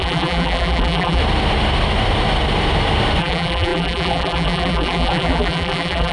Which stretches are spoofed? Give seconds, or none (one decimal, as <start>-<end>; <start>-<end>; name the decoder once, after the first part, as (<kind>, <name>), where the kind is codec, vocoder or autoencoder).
0.0-1.2 (vocoder, BigVGAN v2); 3.2-6.1